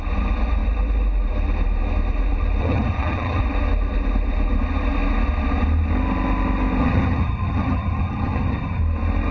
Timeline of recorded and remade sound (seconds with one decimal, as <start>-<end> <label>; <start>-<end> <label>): 0.0-2.6 recorded; 2.6-3.4 remade; 3.4-6.8 recorded; 6.8-8.8 remade; 8.8-9.3 recorded